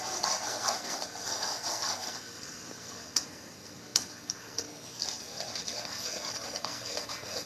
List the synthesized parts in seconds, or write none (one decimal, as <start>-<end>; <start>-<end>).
0.0-7.5